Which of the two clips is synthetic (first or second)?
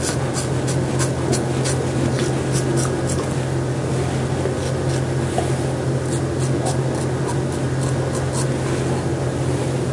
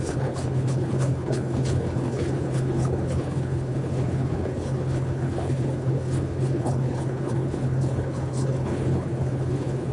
second